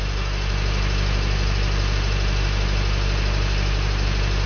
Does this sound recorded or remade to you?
recorded